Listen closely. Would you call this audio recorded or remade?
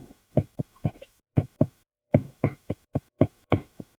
remade